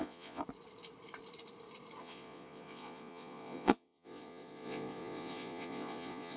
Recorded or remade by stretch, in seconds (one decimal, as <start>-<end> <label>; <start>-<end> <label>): 0.0-0.4 remade; 0.4-2.0 recorded; 2.0-6.4 remade